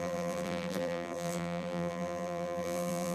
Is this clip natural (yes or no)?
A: no